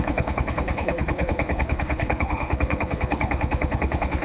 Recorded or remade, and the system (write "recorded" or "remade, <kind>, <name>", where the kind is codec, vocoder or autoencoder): remade, codec, HILCodec